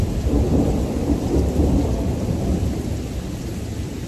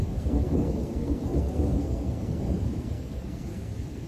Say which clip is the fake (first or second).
second